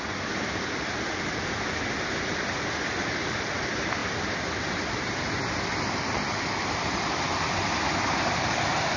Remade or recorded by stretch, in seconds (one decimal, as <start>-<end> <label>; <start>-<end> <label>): 0.0-9.0 recorded